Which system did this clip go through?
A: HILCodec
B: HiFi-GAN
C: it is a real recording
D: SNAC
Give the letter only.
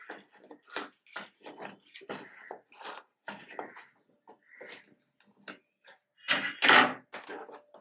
C